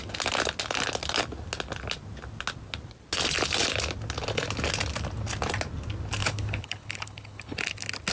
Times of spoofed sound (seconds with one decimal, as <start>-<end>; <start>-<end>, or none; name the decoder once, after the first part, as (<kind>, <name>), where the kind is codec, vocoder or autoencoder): 6.2-7.6 (codec, HILCodec)